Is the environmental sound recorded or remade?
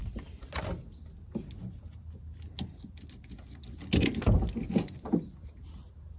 recorded